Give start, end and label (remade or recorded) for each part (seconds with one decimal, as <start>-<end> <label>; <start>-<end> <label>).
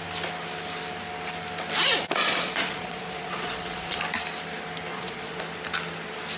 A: 0.0-2.2 recorded; 2.2-4.0 remade; 4.0-4.9 recorded; 4.9-5.4 remade; 5.4-6.4 recorded